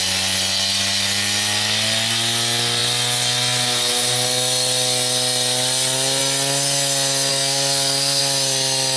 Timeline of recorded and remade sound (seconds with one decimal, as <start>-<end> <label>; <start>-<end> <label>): 0.0-7.3 recorded; 7.3-8.2 remade; 8.2-9.0 recorded